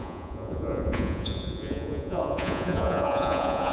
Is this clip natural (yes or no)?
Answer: no